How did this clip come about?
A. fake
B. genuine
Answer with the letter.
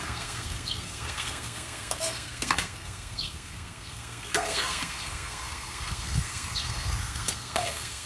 A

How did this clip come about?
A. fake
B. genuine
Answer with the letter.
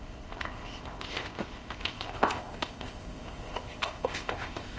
A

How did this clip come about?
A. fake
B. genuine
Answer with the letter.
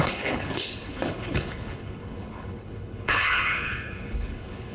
A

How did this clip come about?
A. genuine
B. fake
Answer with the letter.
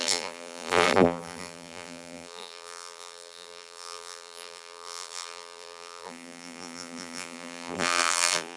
B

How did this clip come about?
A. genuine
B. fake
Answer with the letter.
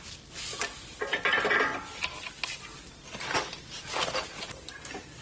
A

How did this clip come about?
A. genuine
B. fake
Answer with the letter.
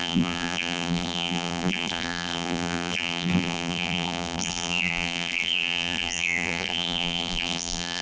B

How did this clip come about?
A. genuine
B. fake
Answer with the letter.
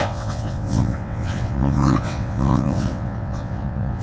B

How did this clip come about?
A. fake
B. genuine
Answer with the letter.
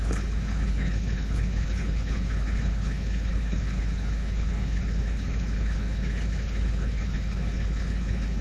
A